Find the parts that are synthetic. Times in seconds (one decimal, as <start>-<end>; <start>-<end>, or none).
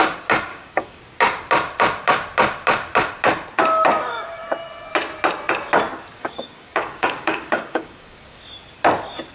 0.5-1.0; 6.2-8.4